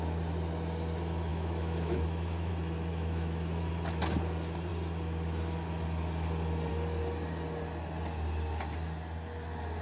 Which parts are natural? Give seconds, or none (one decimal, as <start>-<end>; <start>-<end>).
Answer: 0.0-1.3; 2.5-2.9; 3.7-9.8